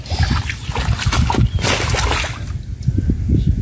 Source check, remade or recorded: recorded